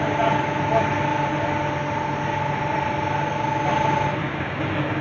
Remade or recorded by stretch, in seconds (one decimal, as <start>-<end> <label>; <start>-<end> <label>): 0.0-4.2 recorded; 4.2-5.0 remade